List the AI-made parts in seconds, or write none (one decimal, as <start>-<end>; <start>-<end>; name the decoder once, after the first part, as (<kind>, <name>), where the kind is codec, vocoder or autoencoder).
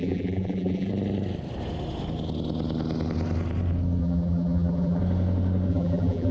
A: 0.0-0.9 (vocoder, BigVGAN v2); 4.0-5.0; 5.7-6.3